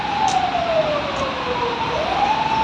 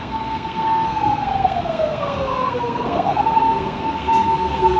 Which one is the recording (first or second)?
first